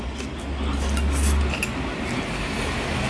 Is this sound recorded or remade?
recorded